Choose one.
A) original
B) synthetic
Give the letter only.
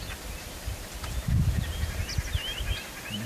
A